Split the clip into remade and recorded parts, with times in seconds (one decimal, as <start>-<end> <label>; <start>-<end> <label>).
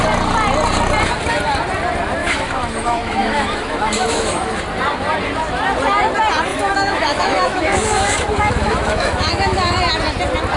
0.0-2.2 recorded; 2.2-4.6 remade; 4.6-6.5 recorded; 6.5-9.8 remade; 9.8-10.6 recorded